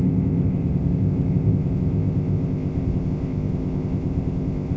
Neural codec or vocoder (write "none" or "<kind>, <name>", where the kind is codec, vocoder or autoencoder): codec, ZipCodec